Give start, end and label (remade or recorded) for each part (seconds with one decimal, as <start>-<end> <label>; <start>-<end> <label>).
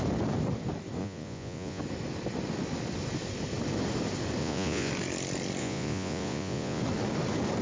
0.0-1.0 recorded; 1.0-1.8 remade; 1.8-4.4 recorded; 4.4-4.9 remade; 4.9-5.6 recorded; 5.6-6.8 remade; 6.8-7.6 recorded